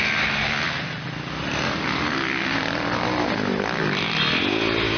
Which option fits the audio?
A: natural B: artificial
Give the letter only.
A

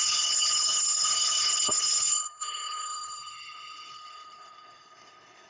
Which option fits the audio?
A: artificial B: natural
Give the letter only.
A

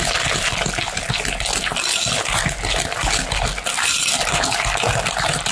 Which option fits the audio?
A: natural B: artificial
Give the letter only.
A